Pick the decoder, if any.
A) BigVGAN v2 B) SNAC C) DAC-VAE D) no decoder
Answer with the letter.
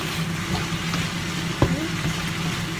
D